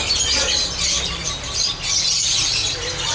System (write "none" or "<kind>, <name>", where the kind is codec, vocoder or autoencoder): none